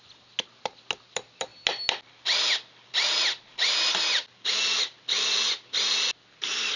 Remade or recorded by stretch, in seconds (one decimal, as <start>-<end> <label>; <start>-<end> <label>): 0.0-6.8 recorded

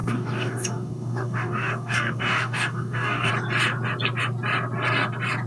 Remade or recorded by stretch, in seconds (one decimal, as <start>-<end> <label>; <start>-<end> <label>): 0.0-3.3 remade; 3.3-5.5 recorded